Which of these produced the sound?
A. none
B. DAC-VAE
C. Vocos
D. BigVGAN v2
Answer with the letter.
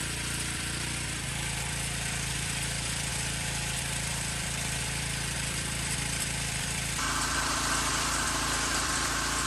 D